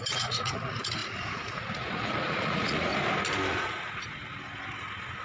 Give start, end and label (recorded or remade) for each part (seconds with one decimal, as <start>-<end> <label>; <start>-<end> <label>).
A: 0.0-2.9 remade; 2.9-3.5 recorded; 3.5-4.2 remade; 4.2-5.2 recorded